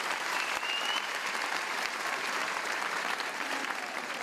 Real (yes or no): no